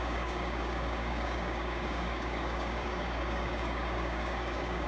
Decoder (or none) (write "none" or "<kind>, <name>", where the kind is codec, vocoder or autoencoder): codec, DAC